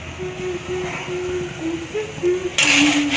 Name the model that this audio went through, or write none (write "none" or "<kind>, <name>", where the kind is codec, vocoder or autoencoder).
none